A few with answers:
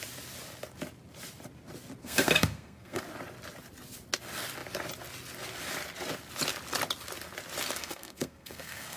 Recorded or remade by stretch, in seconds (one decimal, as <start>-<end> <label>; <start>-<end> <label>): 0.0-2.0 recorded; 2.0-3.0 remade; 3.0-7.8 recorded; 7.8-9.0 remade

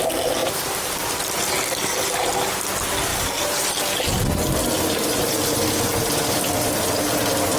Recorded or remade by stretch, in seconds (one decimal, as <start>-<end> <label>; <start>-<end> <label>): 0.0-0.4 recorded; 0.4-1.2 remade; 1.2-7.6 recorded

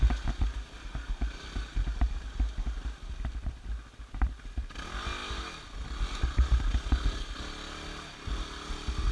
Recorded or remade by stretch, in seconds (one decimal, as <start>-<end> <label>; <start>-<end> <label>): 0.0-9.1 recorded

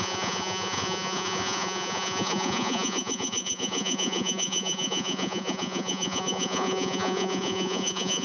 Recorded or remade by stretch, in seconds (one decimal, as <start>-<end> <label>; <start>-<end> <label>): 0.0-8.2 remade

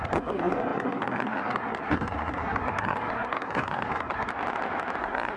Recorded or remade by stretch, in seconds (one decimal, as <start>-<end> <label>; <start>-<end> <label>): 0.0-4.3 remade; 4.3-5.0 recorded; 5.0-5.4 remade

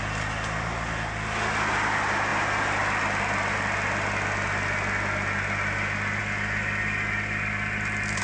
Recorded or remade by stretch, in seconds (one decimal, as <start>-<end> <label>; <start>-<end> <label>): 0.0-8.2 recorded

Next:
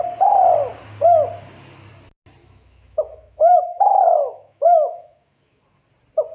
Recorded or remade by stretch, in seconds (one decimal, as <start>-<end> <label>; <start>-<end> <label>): 0.0-2.4 recorded; 2.4-5.6 remade; 5.6-6.3 recorded